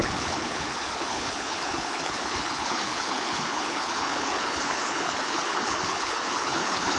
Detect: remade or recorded remade